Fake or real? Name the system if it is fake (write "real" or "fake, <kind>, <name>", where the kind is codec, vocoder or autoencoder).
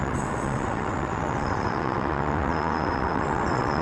fake, vocoder, WaveNeXt